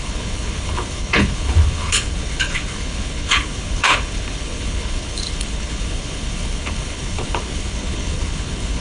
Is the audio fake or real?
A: fake